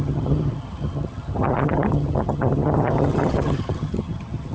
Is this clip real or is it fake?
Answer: fake